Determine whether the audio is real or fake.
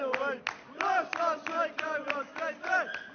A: real